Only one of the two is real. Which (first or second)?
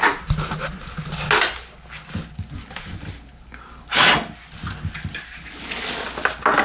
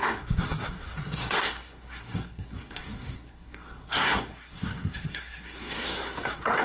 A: first